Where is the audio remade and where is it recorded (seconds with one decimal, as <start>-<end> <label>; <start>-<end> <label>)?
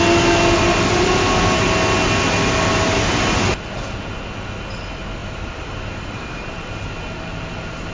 0.0-5.2 recorded; 5.2-6.4 remade; 6.4-7.9 recorded